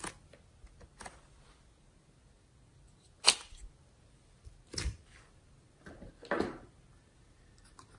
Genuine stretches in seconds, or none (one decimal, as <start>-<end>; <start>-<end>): 0.0-8.0